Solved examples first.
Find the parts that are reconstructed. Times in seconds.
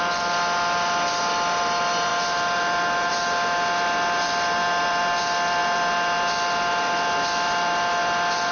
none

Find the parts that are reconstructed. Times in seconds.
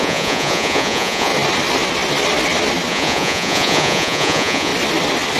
0.0-1.3 (vocoder, Vocos); 2.9-4.7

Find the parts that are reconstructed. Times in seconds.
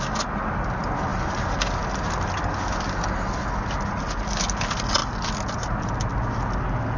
none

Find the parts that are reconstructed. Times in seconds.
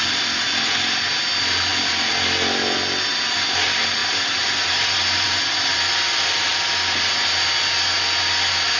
4.0-5.8 (vocoder, BigVGAN v2)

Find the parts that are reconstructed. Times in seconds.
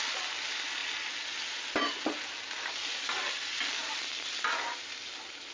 none